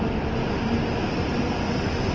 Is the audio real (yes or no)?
yes